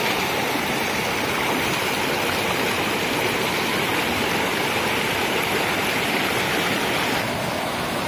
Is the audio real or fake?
real